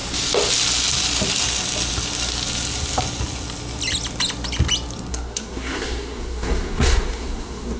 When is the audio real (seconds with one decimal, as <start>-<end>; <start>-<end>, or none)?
0.0-5.1